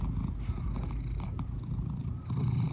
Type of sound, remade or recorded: recorded